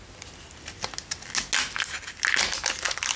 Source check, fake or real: real